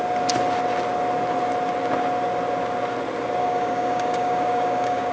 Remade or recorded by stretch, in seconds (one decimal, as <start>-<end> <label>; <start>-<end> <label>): 0.0-3.4 recorded; 3.4-5.1 remade